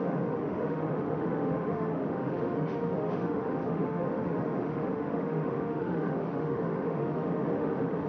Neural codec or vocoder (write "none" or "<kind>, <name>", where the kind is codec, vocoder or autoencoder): autoencoder, DAC-VAE